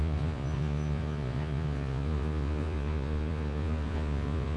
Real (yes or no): no